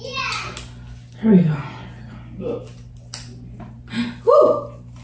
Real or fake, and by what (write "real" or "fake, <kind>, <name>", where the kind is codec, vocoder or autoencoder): real